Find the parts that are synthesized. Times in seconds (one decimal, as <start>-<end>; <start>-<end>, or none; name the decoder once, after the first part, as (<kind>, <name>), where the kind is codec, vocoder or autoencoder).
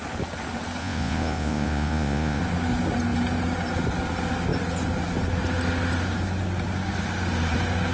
0.8-2.4 (vocoder, Vocos)